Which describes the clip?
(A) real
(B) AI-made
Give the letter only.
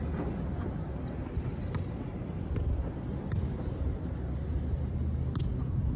A